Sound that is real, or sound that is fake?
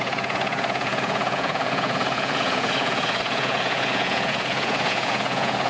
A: fake